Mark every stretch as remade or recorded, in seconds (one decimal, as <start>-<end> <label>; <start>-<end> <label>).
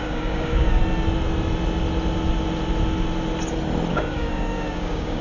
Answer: 0.0-0.8 remade; 0.8-3.9 recorded; 3.9-5.2 remade